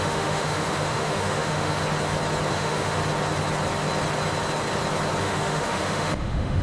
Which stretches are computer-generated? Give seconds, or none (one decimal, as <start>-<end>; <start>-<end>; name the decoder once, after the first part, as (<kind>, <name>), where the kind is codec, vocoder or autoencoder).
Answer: 0.0-1.8 (autoencoder, DAC-VAE); 2.5-3.0; 5.2-6.6